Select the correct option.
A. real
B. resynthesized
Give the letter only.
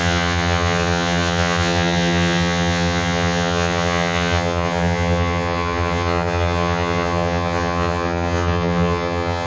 B